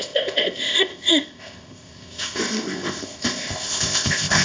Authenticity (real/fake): fake